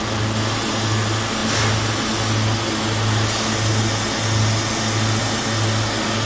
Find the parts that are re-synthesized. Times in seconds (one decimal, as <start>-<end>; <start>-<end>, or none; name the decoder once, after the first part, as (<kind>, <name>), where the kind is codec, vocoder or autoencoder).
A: none